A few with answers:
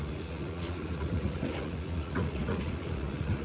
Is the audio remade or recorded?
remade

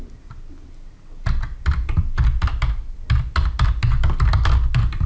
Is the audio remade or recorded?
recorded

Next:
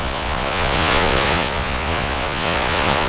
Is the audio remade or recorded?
remade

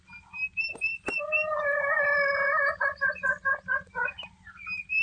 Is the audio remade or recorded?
recorded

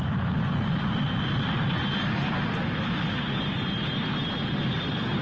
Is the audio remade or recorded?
recorded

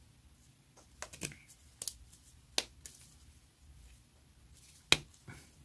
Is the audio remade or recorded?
recorded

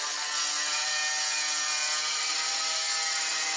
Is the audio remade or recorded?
recorded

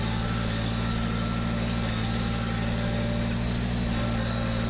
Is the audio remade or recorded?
recorded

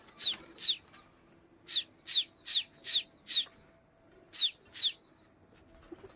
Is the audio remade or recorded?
recorded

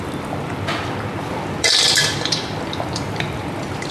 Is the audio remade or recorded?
remade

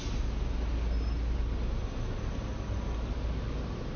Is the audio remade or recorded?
recorded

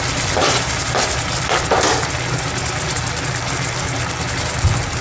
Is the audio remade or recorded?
remade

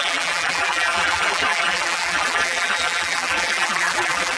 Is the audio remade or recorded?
remade